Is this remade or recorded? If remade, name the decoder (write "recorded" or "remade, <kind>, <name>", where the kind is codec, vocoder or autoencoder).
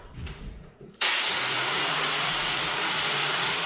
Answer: remade, vocoder, Vocos